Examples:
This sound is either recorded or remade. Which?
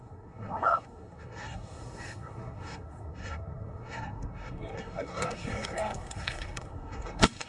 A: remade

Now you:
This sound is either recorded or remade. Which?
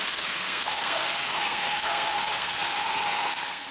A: remade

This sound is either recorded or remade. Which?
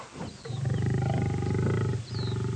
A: recorded